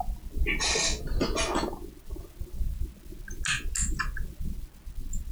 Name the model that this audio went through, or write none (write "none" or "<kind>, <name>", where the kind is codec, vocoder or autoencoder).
none